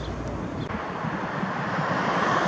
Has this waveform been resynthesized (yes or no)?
no